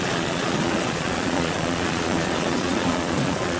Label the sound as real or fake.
fake